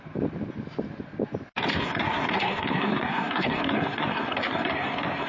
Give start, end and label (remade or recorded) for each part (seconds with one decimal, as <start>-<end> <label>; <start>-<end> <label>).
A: 0.0-1.7 recorded; 1.7-5.3 remade